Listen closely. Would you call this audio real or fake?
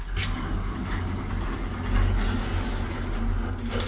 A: real